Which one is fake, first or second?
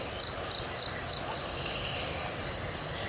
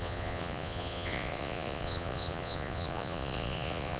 second